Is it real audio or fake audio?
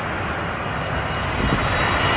real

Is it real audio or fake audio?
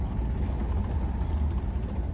real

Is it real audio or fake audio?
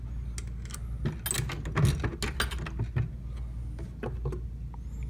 real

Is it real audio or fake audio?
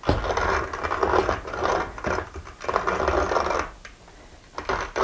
real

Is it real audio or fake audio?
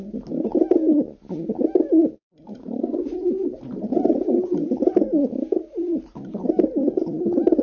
real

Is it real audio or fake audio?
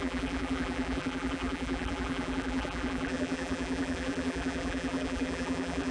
fake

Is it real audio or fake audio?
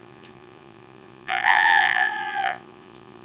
fake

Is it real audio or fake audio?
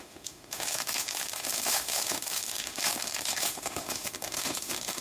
fake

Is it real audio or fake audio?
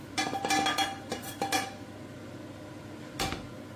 real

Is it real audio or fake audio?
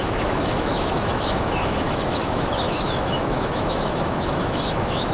fake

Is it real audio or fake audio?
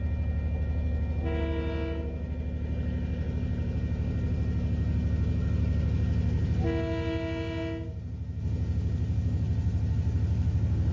real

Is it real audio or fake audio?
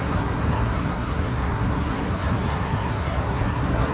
fake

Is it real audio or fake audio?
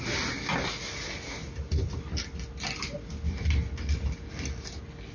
real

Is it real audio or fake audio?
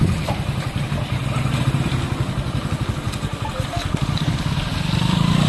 real